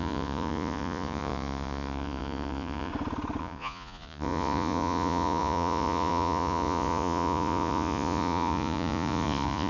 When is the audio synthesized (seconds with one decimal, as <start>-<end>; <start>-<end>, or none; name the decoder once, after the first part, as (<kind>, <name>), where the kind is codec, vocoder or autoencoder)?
0.0-2.9 (vocoder, Vocos); 3.4-9.7